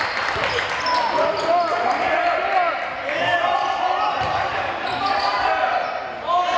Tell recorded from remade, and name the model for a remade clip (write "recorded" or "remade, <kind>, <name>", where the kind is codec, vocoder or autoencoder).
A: recorded